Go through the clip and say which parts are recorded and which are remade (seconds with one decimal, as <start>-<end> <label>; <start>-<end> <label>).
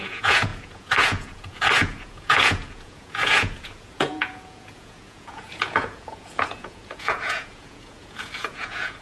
0.0-9.0 remade